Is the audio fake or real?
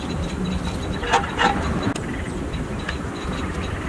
real